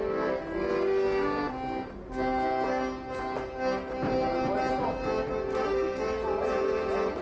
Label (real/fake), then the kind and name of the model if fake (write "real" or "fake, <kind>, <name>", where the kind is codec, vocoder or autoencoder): real